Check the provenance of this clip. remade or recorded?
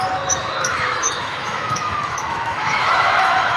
remade